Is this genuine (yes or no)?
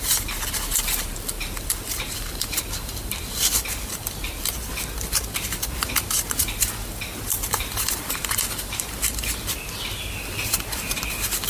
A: no